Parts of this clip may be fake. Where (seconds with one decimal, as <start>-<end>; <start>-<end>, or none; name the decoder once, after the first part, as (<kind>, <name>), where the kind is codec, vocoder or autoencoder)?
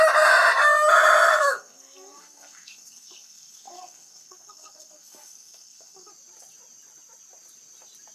1.3-6.1 (codec, SNAC)